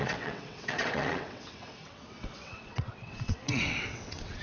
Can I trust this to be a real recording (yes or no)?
no